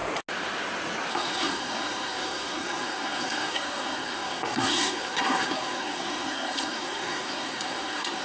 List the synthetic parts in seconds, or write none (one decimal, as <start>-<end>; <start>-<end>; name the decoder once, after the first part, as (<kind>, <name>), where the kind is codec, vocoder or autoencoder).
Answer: 1.1-8.2 (codec, SNAC)